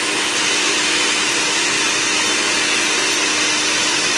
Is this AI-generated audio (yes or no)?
no